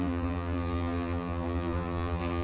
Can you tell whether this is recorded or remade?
remade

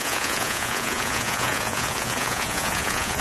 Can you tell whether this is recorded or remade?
remade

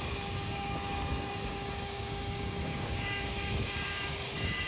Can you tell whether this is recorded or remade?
remade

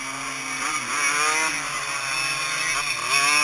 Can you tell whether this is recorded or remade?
recorded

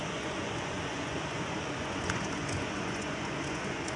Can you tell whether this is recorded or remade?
remade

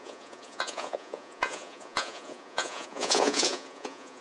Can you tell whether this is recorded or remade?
remade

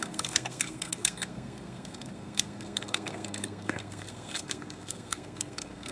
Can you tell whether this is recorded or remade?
remade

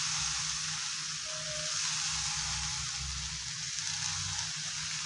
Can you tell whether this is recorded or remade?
recorded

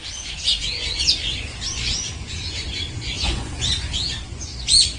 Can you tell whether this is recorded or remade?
remade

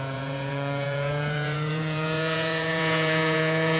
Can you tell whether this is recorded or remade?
remade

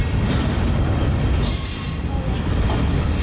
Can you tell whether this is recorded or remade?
recorded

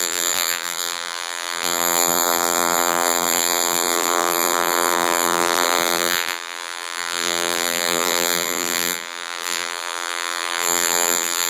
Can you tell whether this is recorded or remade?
remade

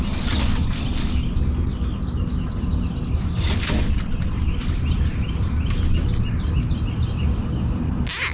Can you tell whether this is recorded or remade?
recorded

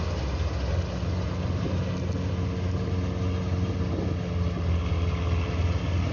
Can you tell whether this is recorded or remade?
recorded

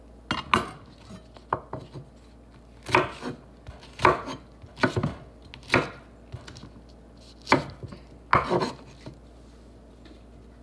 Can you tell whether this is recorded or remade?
recorded